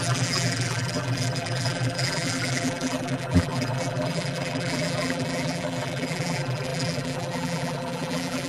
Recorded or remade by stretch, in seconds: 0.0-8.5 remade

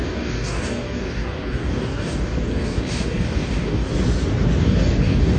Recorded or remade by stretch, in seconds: 0.0-3.9 remade; 3.9-4.6 recorded; 4.6-5.4 remade

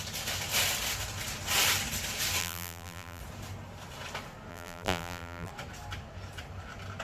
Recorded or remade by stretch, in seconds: 0.0-2.4 recorded; 2.4-3.2 remade; 3.2-4.5 recorded; 4.5-5.5 remade; 5.5-7.0 recorded